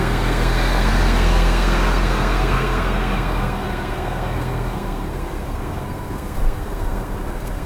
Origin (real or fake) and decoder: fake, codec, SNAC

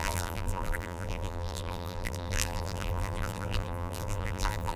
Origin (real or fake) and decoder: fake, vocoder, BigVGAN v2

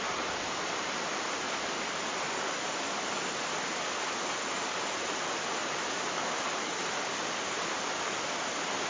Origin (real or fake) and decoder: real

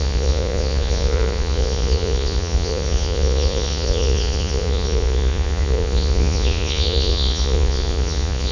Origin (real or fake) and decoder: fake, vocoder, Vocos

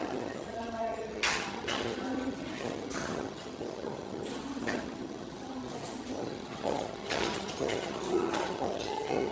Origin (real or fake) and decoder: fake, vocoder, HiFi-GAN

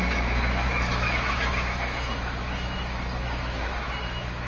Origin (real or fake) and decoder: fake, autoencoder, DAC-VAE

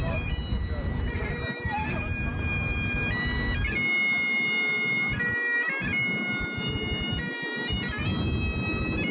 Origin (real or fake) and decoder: real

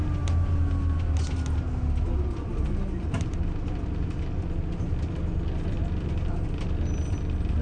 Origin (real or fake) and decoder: real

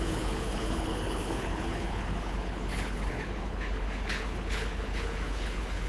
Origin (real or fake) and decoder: fake, codec, HILCodec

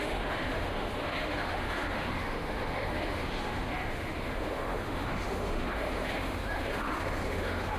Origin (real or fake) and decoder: fake, autoencoder, DAC-VAE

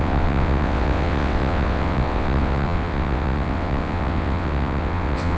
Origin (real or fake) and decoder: fake, vocoder, WaveNeXt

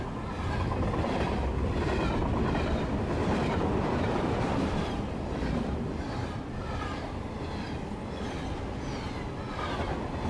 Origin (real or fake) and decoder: real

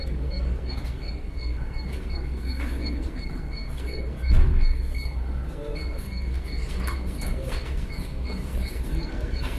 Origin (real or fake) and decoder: fake, codec, SNAC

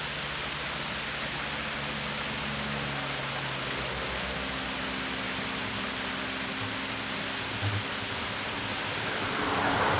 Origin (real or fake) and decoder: real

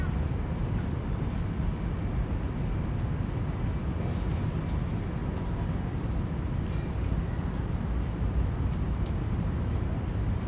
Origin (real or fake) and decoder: real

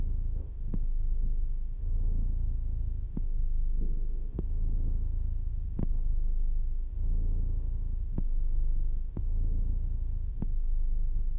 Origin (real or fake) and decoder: fake, autoencoder, DAC-VAE